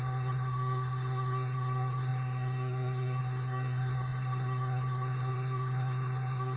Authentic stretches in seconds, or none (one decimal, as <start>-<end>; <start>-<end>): none